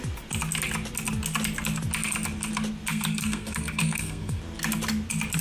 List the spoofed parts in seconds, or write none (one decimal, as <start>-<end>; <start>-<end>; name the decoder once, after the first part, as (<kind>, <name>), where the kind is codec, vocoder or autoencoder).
2.9-4.4 (codec, SNAC)